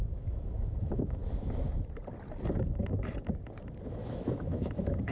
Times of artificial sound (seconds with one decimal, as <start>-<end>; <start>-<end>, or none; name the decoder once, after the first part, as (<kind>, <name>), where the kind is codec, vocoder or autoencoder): 0.0-1.2 (autoencoder, DAC-VAE); 3.9-5.1